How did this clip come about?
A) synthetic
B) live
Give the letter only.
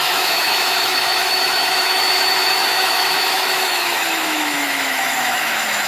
A